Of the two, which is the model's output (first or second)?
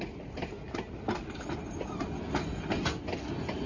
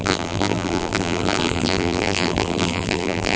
second